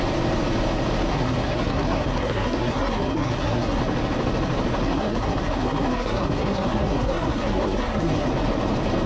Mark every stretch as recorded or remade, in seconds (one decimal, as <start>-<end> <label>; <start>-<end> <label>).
0.0-1.1 recorded; 1.1-3.8 remade; 3.8-4.8 recorded; 4.8-8.3 remade; 8.3-9.1 recorded